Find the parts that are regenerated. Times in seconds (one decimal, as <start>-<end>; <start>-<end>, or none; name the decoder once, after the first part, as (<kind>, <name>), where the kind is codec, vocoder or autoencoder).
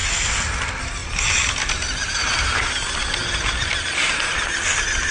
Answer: 0.0-0.5 (vocoder, BigVGAN v2); 1.0-2.7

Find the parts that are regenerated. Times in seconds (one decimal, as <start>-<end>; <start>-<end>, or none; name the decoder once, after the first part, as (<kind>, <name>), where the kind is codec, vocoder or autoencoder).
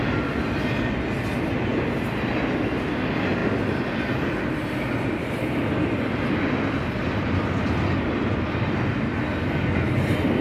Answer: none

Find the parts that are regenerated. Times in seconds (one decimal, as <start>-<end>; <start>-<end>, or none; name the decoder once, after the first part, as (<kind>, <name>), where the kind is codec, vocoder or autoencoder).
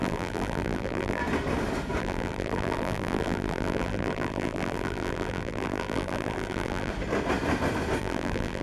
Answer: 0.0-1.2 (vocoder, BigVGAN v2); 2.0-6.9; 8.0-8.6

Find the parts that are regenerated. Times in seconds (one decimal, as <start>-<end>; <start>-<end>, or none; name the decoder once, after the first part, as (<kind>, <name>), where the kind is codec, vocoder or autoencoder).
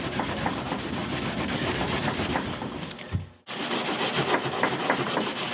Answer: none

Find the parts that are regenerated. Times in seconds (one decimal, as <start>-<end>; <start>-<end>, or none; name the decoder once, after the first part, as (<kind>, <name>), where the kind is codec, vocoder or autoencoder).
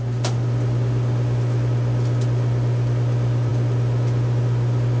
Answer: none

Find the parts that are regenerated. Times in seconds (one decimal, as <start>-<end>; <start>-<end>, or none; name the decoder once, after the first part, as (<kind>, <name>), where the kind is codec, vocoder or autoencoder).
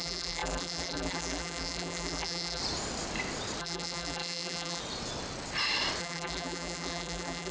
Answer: 0.0-2.6 (vocoder, BigVGAN v2); 3.6-4.8; 6.0-7.5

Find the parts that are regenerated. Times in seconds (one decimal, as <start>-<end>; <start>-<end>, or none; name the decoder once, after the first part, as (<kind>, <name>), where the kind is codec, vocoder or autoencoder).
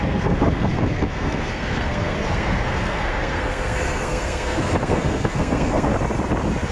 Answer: 0.0-5.9 (codec, SNAC)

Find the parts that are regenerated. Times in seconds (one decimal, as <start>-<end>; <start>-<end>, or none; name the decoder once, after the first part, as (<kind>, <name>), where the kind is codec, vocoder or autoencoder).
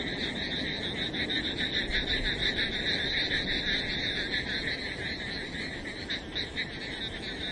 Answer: none